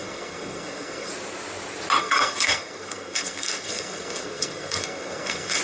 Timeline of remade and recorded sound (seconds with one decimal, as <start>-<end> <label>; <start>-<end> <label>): 0.0-1.1 remade; 1.1-2.0 recorded; 2.0-5.6 remade